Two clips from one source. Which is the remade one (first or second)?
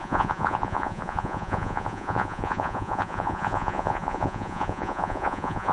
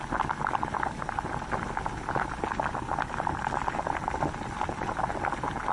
first